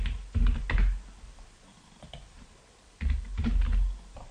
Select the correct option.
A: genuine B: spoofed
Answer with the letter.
A